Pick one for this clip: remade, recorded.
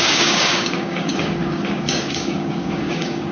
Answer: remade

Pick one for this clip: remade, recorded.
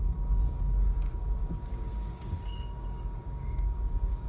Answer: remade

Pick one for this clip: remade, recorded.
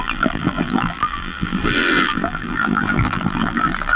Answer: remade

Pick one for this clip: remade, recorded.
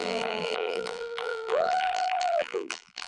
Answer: remade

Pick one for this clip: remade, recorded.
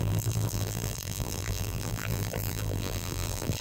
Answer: remade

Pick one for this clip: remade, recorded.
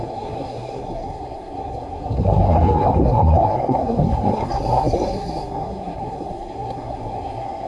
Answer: remade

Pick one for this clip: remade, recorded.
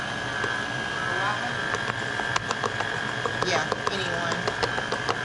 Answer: recorded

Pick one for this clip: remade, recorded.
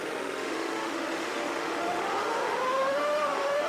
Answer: remade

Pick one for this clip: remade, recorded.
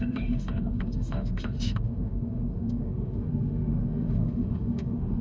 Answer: remade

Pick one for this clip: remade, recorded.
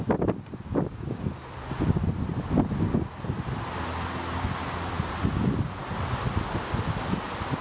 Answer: recorded